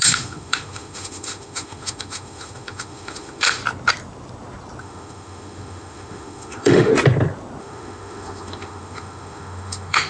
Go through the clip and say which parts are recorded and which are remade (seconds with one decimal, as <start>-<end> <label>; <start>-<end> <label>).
0.0-3.6 remade; 3.6-4.8 recorded; 4.8-6.9 remade; 6.9-7.6 recorded; 7.6-10.1 remade